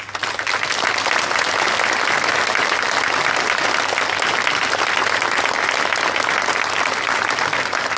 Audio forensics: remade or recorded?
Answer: recorded